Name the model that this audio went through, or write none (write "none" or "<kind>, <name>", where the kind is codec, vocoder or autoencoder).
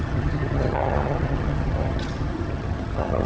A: vocoder, HiFi-GAN